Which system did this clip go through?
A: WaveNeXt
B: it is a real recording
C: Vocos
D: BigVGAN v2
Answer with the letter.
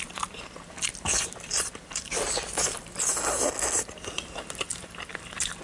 D